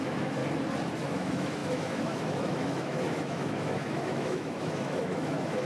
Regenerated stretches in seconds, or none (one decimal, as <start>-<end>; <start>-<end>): 0.0-0.4; 1.0-5.6